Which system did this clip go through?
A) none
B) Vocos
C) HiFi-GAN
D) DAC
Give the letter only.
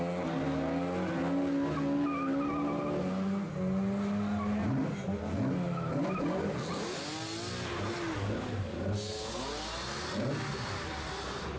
A